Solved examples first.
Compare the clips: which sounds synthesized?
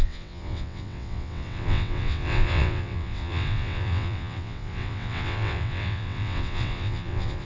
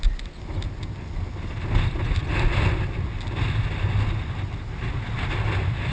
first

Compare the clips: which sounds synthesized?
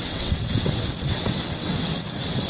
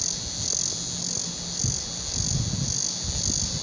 first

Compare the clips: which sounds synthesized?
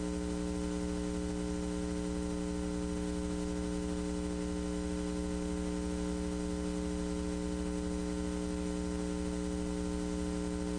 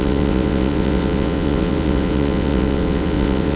second